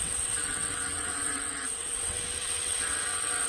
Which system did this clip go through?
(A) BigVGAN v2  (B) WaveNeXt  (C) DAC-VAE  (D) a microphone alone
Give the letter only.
B